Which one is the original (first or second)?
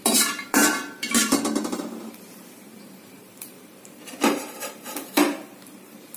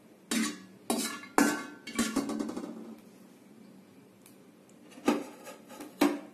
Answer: second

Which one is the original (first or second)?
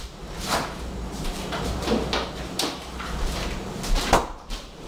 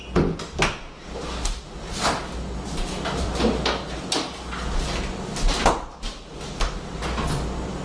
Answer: second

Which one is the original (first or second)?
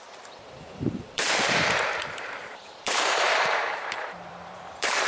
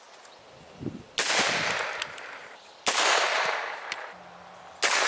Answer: second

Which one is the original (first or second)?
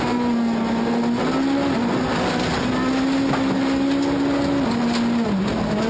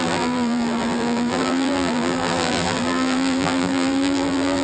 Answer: first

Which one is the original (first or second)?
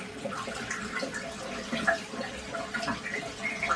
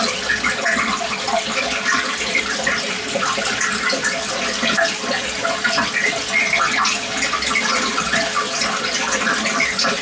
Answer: second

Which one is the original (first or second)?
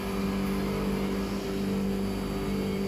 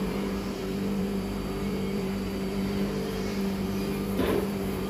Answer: first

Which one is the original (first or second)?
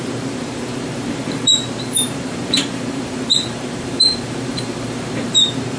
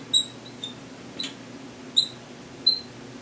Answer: second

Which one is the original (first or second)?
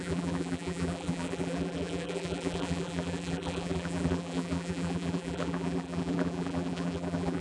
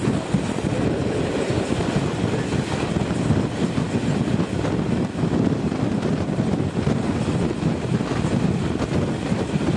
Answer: second